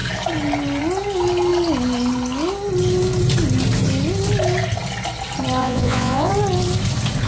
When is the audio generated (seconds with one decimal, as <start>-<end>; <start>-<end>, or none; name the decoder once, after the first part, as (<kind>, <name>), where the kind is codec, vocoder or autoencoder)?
5.6-6.3 (vocoder, Vocos)